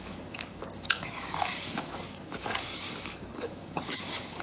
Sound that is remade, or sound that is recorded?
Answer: remade